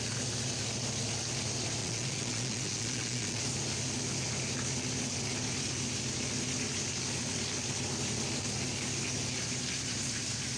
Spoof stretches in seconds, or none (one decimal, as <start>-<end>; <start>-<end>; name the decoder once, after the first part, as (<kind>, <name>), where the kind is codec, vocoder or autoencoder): 1.8-3.4 (vocoder, Vocos)